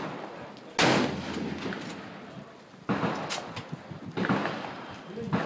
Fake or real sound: real